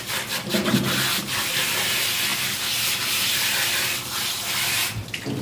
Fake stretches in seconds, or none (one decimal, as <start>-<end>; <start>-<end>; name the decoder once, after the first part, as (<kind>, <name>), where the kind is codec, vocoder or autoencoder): none